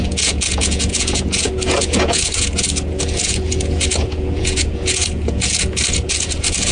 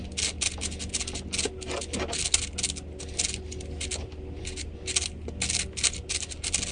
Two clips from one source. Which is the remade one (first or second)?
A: first